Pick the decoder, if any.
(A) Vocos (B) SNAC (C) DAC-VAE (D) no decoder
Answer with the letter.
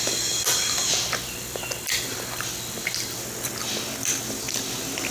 D